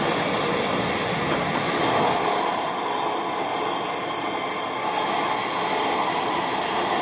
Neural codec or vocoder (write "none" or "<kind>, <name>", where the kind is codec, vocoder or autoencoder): none